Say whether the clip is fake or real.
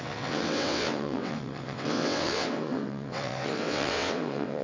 fake